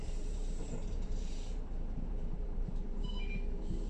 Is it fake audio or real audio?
fake